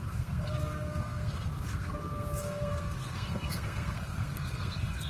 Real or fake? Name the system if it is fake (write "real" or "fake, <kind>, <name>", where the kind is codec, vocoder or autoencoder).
fake, codec, SNAC